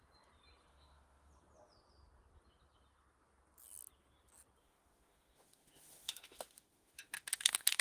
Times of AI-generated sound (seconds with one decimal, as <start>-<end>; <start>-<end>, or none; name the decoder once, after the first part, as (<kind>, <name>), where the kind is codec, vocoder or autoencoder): 0.7-1.3 (autoencoder, DAC-VAE); 4.6-7.8